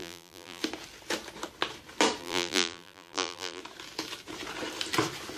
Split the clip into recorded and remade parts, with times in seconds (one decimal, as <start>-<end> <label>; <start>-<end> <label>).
0.0-0.6 remade; 0.6-2.2 recorded; 2.2-3.6 remade; 3.6-5.4 recorded